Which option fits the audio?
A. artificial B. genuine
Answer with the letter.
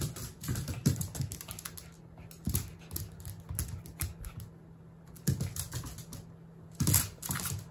B